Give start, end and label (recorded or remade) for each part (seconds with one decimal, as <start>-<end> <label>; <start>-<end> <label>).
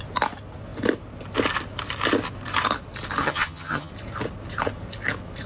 0.0-3.2 recorded; 3.2-3.9 remade; 3.9-5.5 recorded